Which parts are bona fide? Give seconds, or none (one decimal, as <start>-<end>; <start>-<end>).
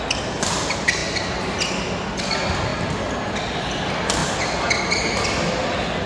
0.0-6.1